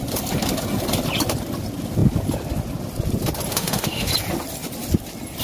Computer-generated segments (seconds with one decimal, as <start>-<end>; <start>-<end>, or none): 3.5-4.1

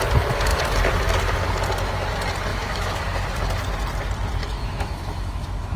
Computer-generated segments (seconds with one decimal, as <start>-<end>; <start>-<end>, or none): 2.5-3.0; 4.4-5.8

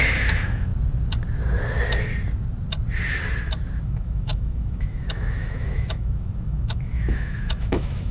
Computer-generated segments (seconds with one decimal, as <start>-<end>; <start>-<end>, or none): 0.0-0.7; 3.8-8.1

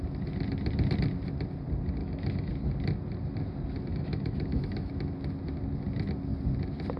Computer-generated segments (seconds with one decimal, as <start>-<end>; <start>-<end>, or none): 2.0-2.5; 3.9-4.9

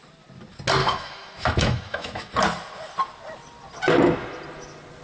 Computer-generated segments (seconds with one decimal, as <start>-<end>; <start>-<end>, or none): 0.8-2.3